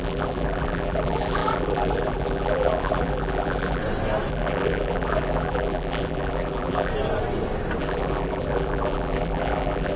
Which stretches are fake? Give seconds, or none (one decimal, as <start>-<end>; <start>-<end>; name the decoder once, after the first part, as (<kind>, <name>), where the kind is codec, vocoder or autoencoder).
0.0-3.8 (vocoder, BigVGAN v2); 4.3-6.9; 7.8-10.0